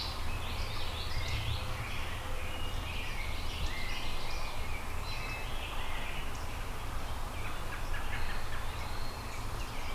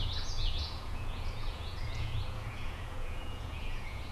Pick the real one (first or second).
first